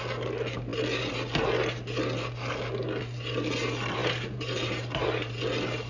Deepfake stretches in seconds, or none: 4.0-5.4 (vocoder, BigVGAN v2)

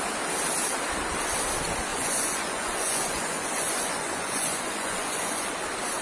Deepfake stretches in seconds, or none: 1.9-5.5 (vocoder, Vocos)